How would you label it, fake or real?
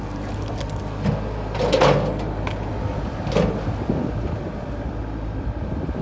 real